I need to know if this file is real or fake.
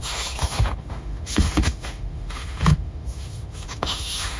fake